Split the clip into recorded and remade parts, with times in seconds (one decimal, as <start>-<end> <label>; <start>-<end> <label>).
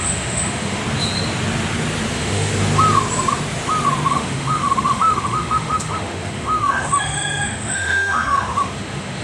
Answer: 0.0-0.8 remade; 0.8-2.1 recorded; 2.1-2.5 remade; 2.5-4.1 recorded; 4.1-9.2 remade